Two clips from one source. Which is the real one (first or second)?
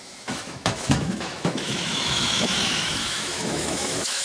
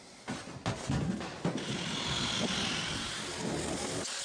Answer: second